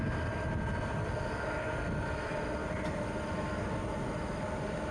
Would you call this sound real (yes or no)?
yes